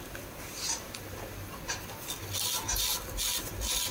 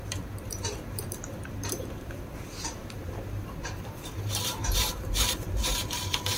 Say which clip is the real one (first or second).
first